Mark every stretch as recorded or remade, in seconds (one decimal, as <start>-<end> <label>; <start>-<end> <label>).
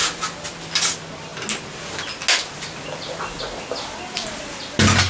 0.0-5.1 recorded